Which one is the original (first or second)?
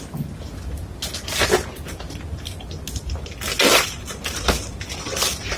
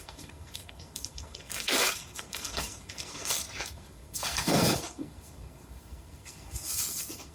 first